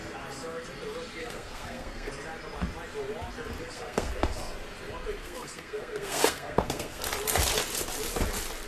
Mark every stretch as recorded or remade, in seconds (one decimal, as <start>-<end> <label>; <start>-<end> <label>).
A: 0.0-1.2 recorded; 1.2-2.1 remade; 2.1-3.6 recorded; 3.6-4.4 remade; 4.4-5.2 recorded; 5.2-7.0 remade; 7.0-8.7 recorded